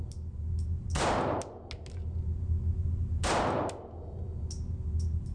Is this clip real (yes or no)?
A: yes